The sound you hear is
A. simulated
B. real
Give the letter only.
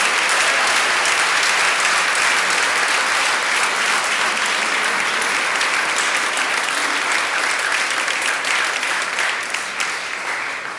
B